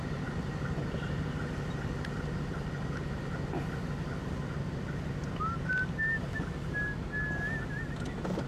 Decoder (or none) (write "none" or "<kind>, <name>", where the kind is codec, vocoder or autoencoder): none